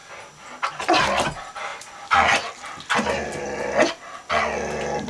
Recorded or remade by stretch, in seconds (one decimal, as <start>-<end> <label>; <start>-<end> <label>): 0.0-5.1 recorded

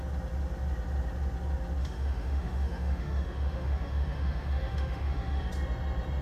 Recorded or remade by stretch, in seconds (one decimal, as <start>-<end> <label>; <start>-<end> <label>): 0.0-1.8 recorded; 1.8-5.5 remade; 5.5-6.2 recorded